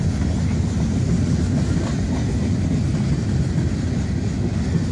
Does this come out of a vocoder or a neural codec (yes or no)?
no